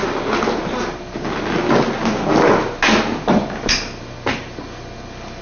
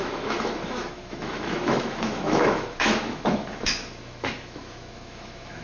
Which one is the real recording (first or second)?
first